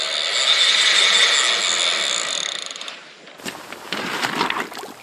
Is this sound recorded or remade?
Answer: recorded